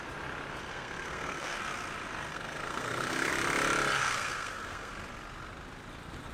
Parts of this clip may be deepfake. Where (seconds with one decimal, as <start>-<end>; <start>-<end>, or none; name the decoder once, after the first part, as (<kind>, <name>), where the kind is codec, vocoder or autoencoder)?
0.7-1.6 (codec, SNAC); 2.3-3.3; 4.0-4.9